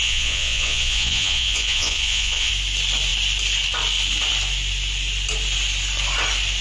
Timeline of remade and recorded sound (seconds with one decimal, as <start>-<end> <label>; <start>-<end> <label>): 0.0-2.5 remade; 2.5-6.6 recorded